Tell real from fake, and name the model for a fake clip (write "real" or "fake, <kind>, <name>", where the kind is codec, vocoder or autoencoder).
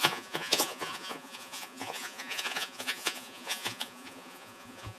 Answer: fake, vocoder, Vocos